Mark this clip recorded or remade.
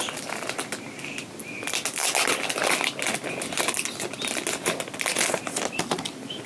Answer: recorded